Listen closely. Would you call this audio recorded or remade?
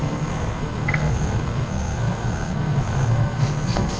remade